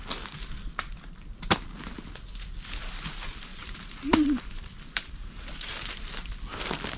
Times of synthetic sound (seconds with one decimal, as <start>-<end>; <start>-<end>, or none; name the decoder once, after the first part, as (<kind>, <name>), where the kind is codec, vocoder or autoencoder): 3.5-5.9 (vocoder, BigVGAN v2)